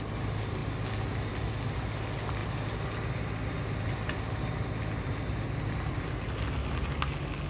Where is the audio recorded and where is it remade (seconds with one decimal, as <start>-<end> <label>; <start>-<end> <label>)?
0.0-7.5 recorded